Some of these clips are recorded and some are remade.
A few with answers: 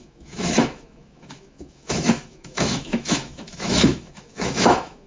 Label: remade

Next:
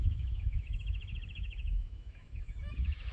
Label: remade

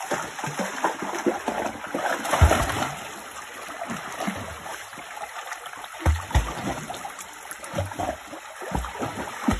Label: recorded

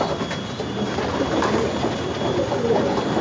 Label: recorded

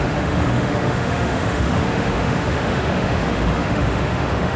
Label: remade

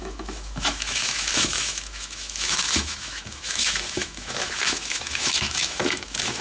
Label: remade